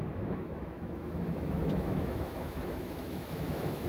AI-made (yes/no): yes